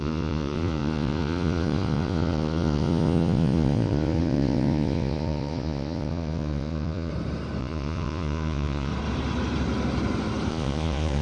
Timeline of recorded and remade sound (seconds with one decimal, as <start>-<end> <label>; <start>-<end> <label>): 0.0-7.1 remade; 7.1-7.6 recorded; 7.6-8.9 remade; 8.9-10.5 recorded; 10.5-11.2 remade